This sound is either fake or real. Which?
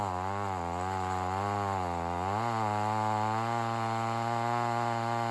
real